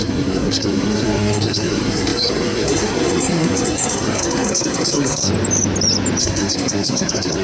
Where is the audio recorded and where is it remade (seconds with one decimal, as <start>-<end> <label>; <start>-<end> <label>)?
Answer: 0.0-5.3 remade; 5.3-6.2 recorded; 6.2-7.4 remade